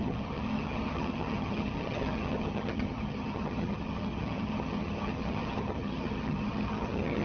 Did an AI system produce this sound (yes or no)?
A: yes